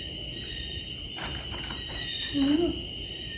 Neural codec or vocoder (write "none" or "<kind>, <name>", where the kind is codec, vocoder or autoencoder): vocoder, BigVGAN v2